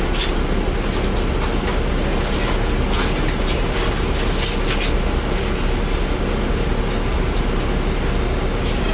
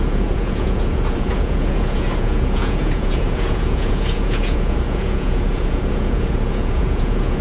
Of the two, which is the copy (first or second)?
second